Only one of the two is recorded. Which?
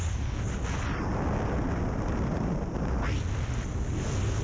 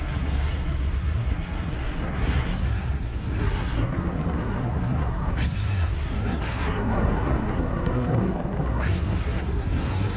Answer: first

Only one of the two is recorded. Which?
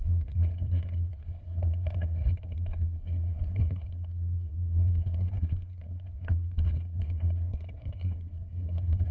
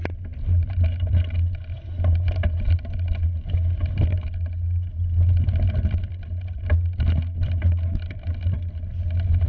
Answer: second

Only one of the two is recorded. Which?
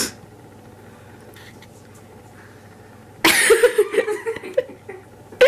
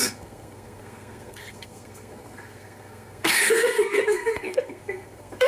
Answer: first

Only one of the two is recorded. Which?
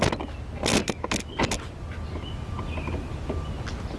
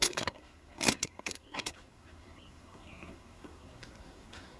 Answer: first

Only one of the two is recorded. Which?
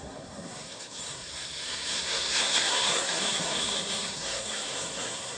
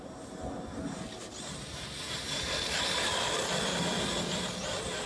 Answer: second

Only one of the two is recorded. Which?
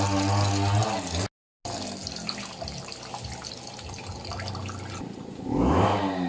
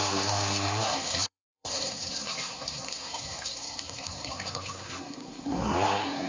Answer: first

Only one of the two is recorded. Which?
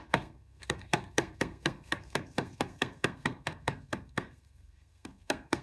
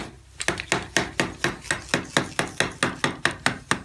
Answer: second